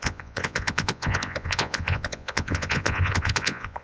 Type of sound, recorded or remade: remade